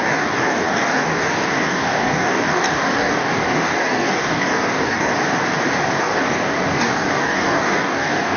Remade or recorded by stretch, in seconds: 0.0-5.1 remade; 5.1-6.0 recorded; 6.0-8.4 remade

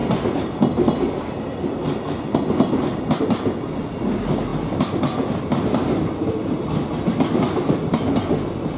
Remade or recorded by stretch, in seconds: 0.0-8.8 recorded

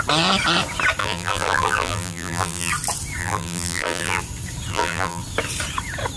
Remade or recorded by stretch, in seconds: 0.0-1.0 recorded; 1.0-2.7 remade; 2.7-3.2 recorded; 3.2-4.2 remade; 4.2-4.7 recorded; 4.7-5.2 remade; 5.2-6.2 recorded

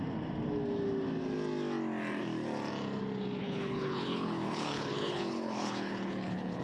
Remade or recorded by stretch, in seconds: 0.0-3.4 recorded; 3.4-6.6 remade

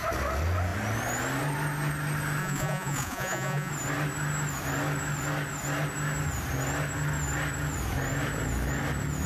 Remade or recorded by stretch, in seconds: 0.0-2.4 recorded; 2.4-3.7 remade; 3.7-9.3 recorded

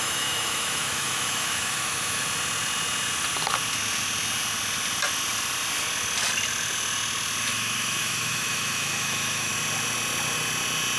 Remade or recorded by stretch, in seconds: 0.0-2.2 remade; 2.2-7.4 recorded; 7.4-9.5 remade; 9.5-11.0 recorded